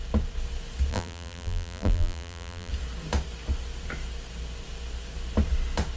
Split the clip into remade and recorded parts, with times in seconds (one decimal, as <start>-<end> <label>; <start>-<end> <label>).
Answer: 0.0-0.9 recorded; 0.9-2.7 remade; 2.7-6.0 recorded